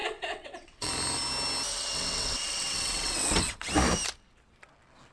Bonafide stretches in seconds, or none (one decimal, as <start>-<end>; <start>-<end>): 0.9-1.7; 3.7-5.1